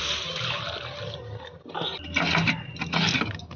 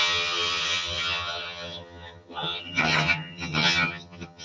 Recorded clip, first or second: first